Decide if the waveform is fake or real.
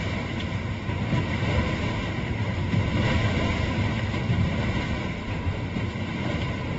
fake